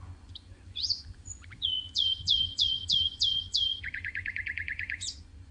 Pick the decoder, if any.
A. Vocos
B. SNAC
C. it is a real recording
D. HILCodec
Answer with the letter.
A